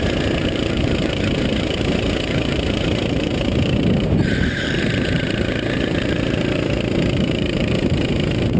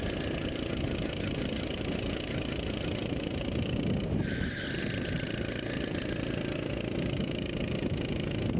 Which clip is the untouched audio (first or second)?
second